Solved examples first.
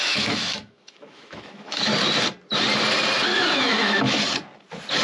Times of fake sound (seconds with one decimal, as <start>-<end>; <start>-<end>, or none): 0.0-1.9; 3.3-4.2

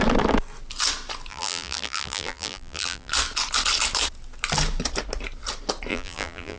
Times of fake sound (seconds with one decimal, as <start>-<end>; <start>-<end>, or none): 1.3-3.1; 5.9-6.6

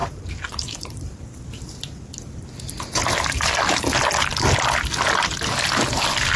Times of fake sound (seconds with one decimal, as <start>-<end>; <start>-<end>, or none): 0.0-1.2

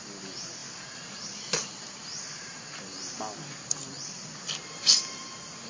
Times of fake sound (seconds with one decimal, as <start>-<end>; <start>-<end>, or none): none

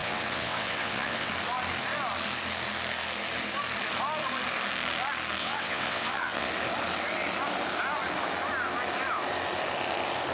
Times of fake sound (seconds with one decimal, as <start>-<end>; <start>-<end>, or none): 0.0-1.3; 5.4-6.5

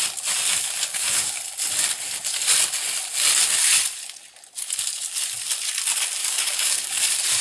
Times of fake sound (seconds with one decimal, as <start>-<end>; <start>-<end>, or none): 0.9-1.4; 6.2-7.0